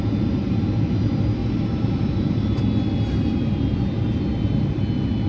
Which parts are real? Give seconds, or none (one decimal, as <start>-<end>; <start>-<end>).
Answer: 0.0-1.4; 2.6-3.3; 3.8-5.3